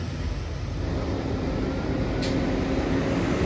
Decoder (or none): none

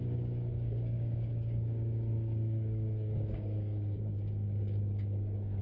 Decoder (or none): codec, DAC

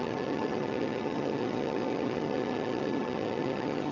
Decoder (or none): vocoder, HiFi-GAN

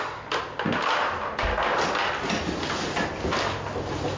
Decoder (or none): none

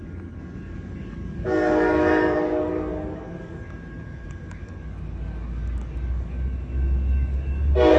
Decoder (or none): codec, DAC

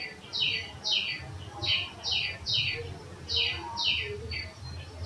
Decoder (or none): none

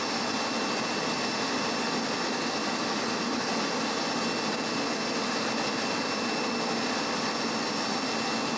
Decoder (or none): none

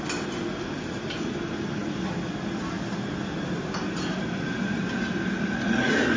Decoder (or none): none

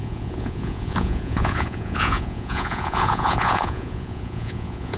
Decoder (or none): vocoder, Vocos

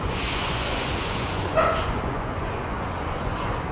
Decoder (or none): vocoder, Vocos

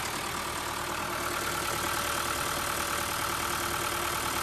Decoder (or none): none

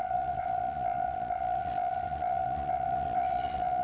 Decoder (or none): vocoder, Vocos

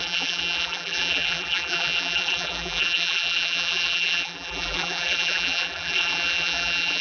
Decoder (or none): vocoder, BigVGAN v2